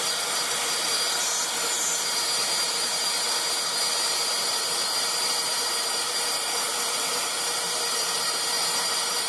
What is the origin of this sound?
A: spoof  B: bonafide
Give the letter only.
A